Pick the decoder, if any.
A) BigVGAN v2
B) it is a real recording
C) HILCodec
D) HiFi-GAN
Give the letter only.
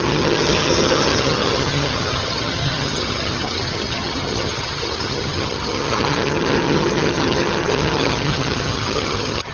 D